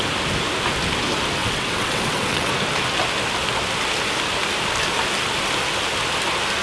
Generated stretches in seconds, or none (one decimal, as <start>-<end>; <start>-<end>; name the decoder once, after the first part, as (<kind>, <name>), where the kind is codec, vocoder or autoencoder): 1.4-2.5 (vocoder, WaveNeXt)